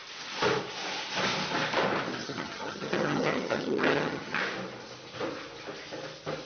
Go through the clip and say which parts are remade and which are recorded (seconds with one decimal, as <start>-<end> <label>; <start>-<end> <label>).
0.0-2.2 recorded; 2.2-4.4 remade; 4.4-6.5 recorded